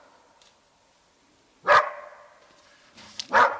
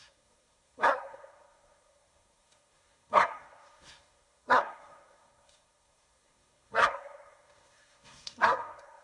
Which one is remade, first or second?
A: second